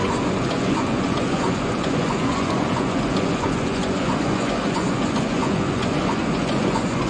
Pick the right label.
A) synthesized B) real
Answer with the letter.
A